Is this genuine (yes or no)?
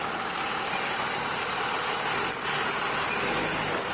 yes